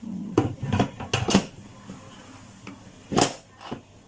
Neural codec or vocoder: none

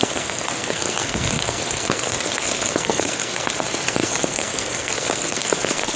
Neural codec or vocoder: codec, SNAC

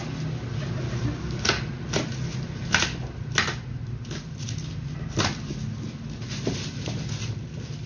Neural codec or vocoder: none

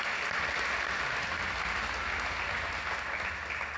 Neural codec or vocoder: none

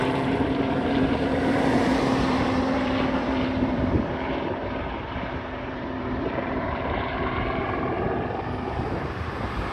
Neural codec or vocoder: vocoder, BigVGAN v2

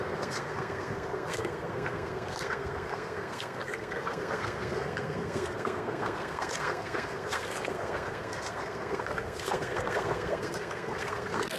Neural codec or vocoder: codec, SNAC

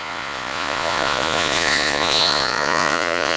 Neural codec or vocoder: vocoder, Vocos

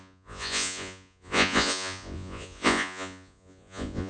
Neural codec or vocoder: vocoder, Vocos